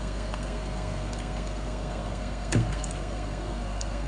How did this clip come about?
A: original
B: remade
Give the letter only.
B